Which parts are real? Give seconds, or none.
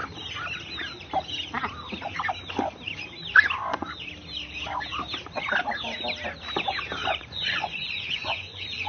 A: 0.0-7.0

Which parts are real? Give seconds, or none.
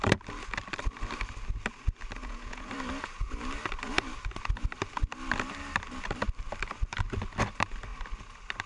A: 0.0-2.2; 2.7-8.7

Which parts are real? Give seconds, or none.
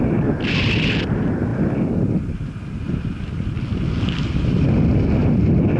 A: 0.0-5.8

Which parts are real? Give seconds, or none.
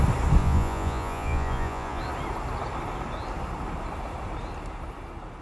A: 0.0-0.4; 2.0-5.4